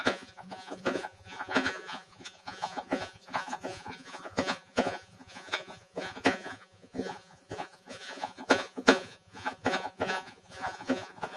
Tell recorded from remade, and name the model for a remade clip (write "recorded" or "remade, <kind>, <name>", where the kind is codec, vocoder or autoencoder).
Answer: remade, vocoder, Vocos